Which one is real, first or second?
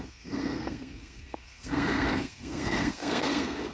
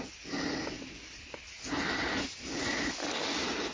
second